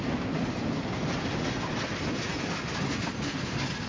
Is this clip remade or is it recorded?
recorded